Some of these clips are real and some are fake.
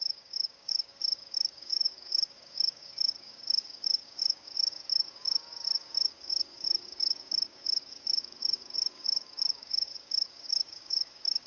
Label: fake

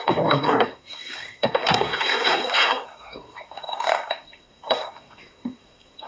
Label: fake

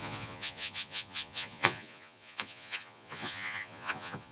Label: fake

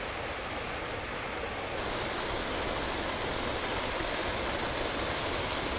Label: real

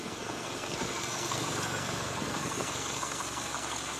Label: fake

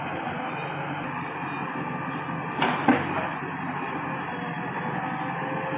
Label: real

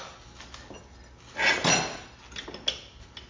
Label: real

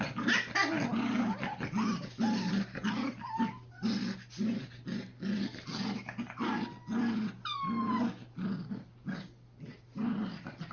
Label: real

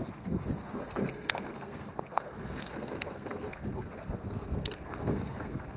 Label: fake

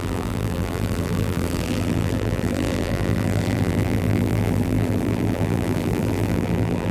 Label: fake